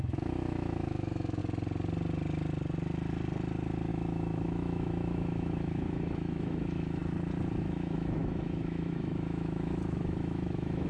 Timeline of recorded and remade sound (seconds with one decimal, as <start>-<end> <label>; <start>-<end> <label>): 0.0-1.4 remade; 1.4-3.9 recorded; 3.9-7.0 remade; 7.0-7.6 recorded; 7.6-10.9 remade